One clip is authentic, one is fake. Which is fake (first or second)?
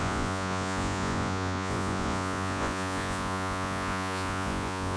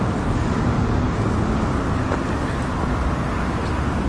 first